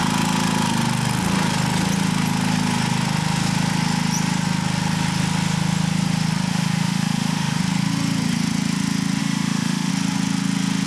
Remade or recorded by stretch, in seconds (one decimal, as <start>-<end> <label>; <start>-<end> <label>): 0.0-6.5 recorded; 6.5-7.6 remade; 7.6-9.2 recorded; 9.2-9.9 remade; 9.9-10.9 recorded